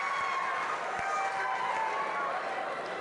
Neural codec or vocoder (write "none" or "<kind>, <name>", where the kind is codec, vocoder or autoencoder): none